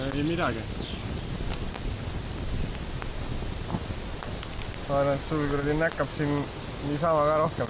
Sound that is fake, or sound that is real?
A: real